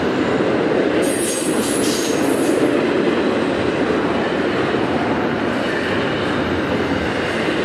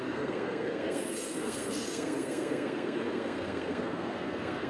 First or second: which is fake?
second